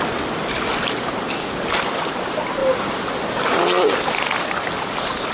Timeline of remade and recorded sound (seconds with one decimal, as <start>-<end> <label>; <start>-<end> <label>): 0.0-5.3 recorded